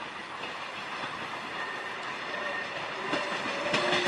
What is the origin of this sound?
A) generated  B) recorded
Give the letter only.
B